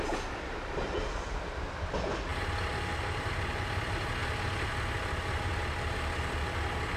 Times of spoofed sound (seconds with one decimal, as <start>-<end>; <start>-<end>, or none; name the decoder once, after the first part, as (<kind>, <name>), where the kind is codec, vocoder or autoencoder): none